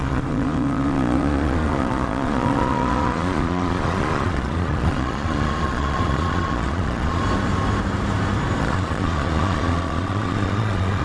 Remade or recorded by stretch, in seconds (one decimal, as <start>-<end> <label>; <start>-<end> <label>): 0.0-7.2 remade; 7.2-8.6 recorded; 8.6-11.0 remade